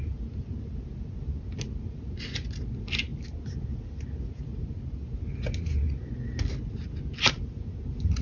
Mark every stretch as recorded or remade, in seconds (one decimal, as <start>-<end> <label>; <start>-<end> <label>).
0.0-8.2 recorded